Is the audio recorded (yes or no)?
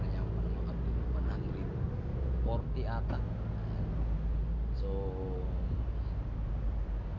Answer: yes